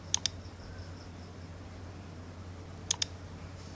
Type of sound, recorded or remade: recorded